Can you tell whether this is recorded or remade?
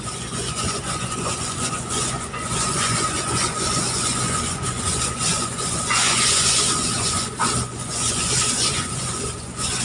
remade